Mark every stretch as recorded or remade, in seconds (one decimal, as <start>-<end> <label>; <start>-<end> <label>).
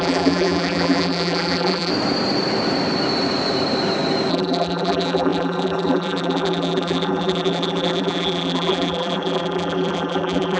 0.0-1.9 remade; 1.9-4.3 recorded; 4.3-10.6 remade